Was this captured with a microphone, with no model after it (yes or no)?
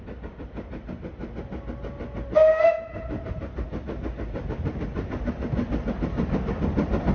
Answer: yes